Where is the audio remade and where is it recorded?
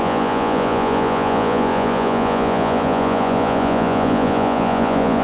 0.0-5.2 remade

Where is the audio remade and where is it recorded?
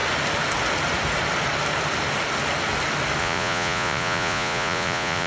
0.0-3.2 recorded; 3.2-5.3 remade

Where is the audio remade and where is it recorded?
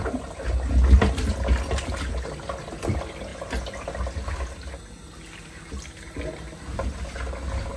0.0-7.8 recorded